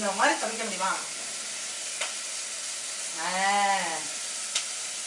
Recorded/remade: recorded